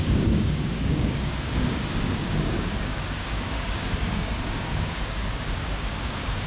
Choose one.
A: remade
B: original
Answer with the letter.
A